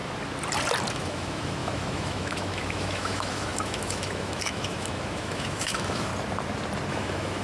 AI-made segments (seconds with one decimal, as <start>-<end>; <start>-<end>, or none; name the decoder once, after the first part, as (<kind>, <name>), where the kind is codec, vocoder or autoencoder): 0.9-6.1 (autoencoder, DAC-VAE); 6.9-7.4